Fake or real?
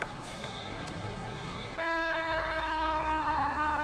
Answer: fake